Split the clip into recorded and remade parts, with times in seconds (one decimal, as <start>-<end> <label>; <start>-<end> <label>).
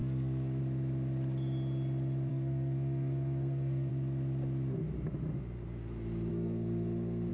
0.0-0.6 remade; 0.6-2.3 recorded; 2.3-3.9 remade; 3.9-6.3 recorded; 6.3-7.3 remade